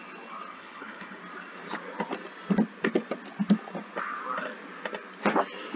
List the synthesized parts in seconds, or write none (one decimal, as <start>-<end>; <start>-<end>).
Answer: 0.5-1.2